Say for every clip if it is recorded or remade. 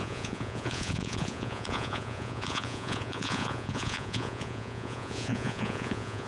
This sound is remade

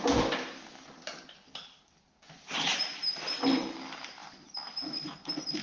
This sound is recorded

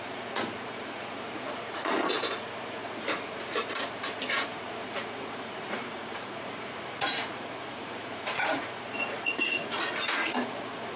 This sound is remade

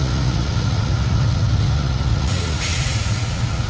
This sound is remade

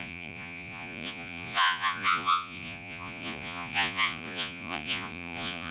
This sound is remade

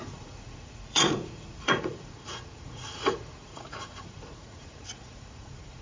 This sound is remade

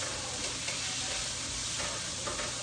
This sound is recorded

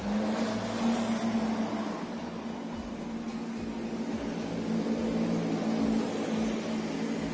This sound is recorded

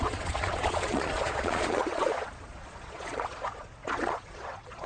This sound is remade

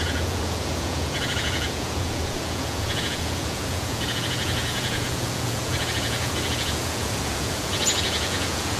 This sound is remade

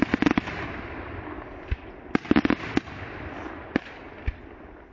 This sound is recorded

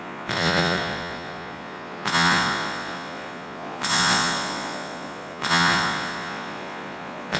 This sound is remade